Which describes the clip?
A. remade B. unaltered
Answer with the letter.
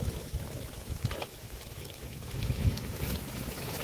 A